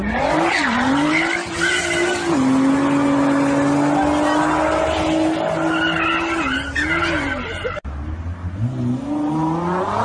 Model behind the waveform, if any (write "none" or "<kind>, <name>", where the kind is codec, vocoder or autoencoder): none